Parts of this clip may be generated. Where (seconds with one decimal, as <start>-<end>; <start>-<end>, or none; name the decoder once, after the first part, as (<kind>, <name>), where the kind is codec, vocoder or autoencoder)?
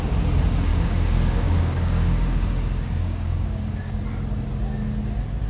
0.7-4.0 (codec, DAC)